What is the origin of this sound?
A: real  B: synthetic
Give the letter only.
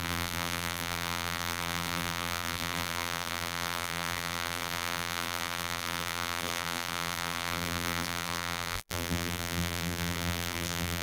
B